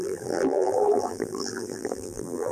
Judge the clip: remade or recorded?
remade